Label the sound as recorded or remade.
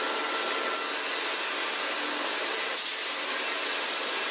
recorded